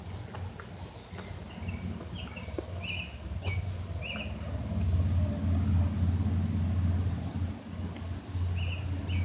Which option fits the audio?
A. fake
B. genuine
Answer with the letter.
B